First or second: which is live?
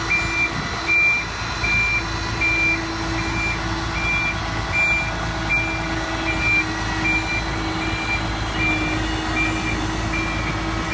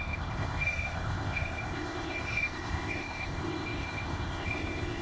first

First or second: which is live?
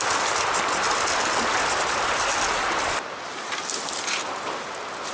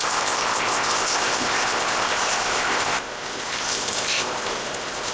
first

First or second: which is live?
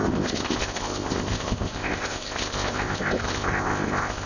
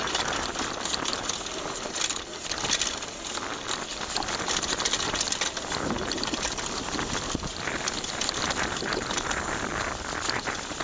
second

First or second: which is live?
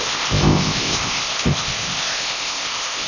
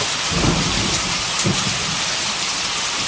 second